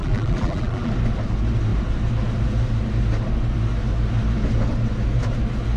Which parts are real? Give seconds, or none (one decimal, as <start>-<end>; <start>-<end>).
0.9-5.8